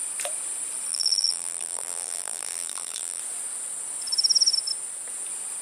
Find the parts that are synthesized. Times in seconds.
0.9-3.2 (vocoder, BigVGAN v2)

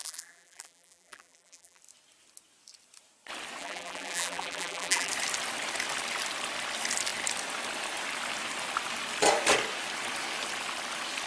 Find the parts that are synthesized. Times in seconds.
0.0-1.8 (vocoder, BigVGAN v2); 3.6-5.1

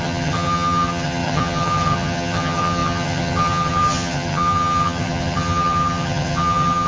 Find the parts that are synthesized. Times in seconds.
0.0-6.9 (vocoder, HiFi-GAN)

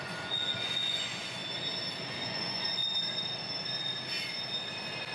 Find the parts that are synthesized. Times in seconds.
0.0-1.4 (vocoder, Vocos); 2.1-2.8